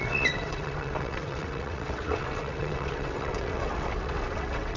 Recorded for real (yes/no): no